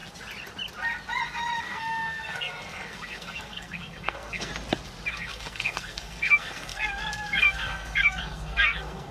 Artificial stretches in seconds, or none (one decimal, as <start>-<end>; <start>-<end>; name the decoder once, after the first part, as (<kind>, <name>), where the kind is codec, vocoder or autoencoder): 1.6-4.5 (codec, SNAC); 5.1-9.1